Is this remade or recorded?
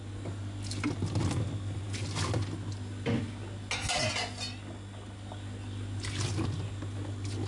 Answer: recorded